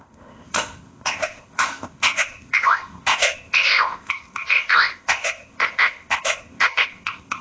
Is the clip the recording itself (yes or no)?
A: no